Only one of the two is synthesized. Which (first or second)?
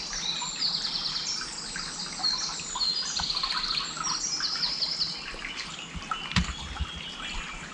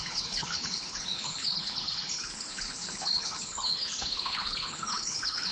second